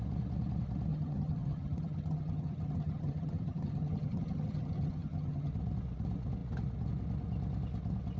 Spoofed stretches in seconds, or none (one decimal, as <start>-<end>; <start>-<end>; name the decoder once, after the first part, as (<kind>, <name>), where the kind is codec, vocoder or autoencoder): 0.9-5.5 (vocoder, HiFi-GAN)